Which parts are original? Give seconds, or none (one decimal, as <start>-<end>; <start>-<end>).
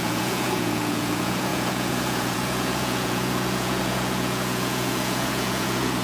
none